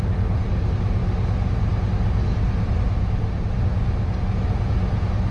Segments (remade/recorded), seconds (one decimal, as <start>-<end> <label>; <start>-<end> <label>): 0.0-5.3 recorded